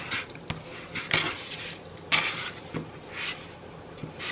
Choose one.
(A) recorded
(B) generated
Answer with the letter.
A